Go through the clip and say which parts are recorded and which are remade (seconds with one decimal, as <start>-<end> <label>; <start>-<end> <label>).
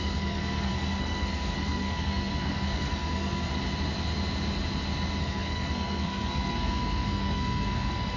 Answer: 0.0-3.5 remade; 3.5-5.2 recorded; 5.2-8.2 remade